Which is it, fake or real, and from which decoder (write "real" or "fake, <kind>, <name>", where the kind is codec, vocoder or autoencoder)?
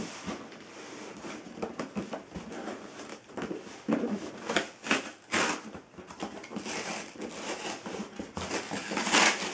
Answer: real